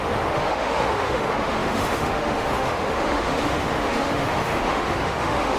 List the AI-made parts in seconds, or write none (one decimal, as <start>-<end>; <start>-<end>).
0.0-5.6